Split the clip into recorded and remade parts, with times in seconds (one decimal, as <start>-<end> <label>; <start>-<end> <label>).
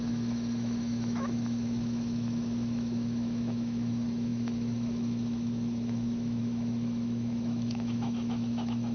0.0-8.9 remade